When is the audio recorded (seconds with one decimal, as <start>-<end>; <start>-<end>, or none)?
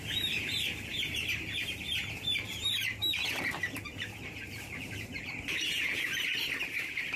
6.3-7.2